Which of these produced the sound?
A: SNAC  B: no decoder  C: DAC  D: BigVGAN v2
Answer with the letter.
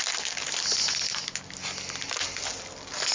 B